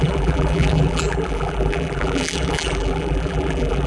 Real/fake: fake